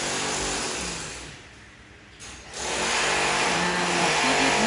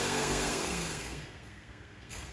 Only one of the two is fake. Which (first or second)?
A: second